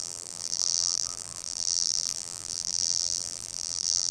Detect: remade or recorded remade